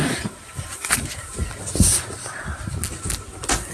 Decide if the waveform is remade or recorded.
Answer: recorded